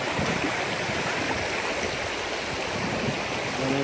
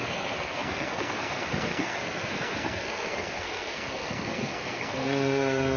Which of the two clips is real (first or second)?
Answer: first